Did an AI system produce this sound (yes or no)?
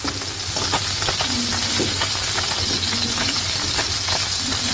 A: no